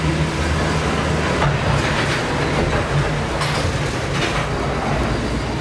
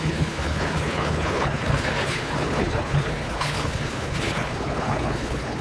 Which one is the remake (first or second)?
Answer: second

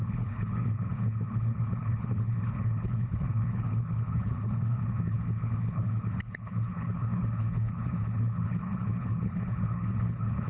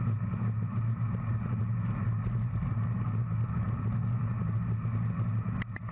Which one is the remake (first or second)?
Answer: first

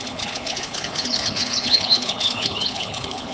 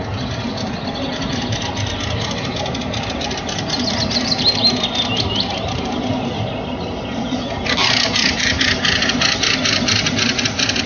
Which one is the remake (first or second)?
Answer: first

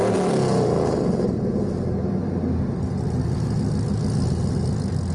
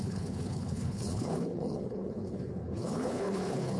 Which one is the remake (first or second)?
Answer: second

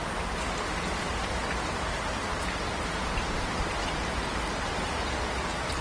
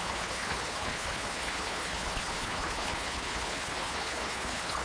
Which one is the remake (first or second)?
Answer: second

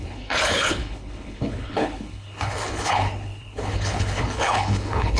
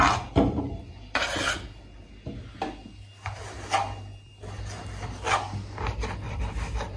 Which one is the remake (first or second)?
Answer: first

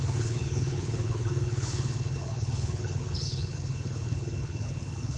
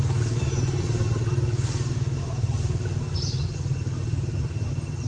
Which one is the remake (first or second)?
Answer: first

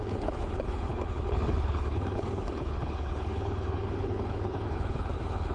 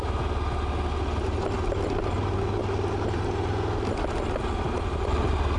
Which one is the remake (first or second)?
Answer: first